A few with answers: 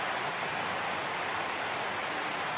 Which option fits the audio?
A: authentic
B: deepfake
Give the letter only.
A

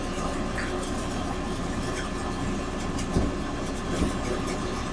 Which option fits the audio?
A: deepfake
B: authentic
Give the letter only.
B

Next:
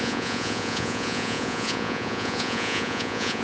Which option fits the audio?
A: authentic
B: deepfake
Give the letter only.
B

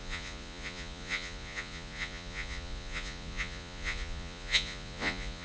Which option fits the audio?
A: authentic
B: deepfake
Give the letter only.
B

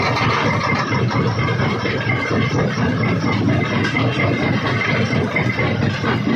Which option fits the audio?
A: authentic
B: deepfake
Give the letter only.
A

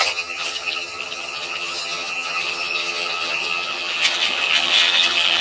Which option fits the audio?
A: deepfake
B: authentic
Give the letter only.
A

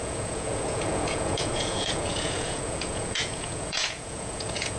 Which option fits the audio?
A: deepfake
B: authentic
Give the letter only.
A